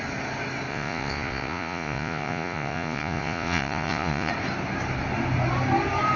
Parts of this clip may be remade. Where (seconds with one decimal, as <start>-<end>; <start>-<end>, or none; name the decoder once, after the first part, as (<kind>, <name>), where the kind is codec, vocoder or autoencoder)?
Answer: 0.7-4.3 (vocoder, Vocos)